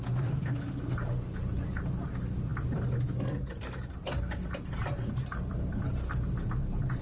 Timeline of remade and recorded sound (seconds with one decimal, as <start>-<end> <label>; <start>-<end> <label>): 0.0-7.0 recorded